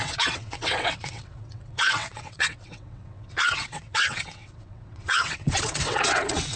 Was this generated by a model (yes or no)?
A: yes